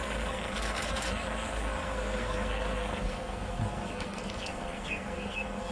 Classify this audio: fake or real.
fake